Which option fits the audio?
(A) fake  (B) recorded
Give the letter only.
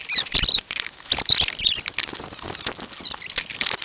B